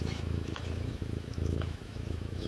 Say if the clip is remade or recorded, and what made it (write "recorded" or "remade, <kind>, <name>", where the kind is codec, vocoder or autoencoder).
remade, autoencoder, DAC-VAE